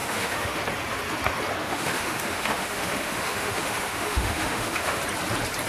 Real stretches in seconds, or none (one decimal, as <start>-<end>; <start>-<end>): 0.6-1.6; 5.0-5.7